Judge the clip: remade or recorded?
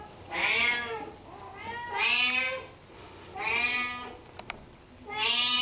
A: recorded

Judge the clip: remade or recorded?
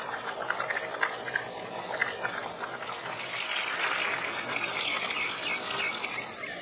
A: recorded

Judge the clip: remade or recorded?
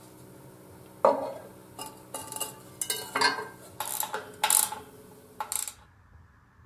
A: recorded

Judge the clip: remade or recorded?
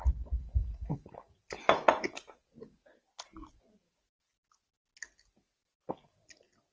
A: recorded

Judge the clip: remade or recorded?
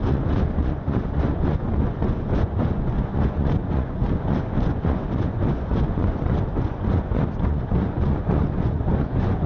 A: remade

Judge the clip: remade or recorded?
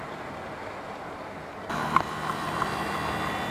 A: recorded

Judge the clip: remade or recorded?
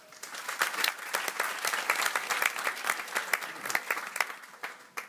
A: recorded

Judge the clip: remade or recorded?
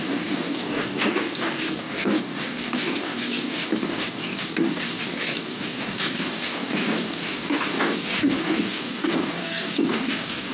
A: remade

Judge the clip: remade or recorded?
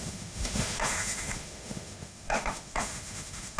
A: remade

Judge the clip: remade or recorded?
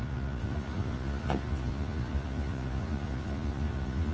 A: remade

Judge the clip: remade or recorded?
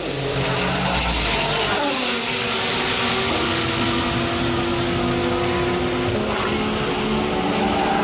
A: recorded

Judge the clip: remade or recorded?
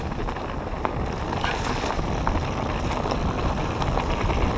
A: recorded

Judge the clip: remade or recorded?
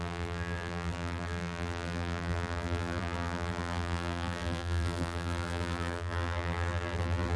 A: remade